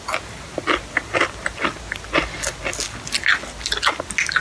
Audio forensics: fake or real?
real